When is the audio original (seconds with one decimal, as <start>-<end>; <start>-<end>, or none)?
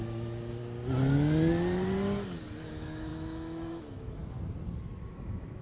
0.6-2.7; 4.2-5.0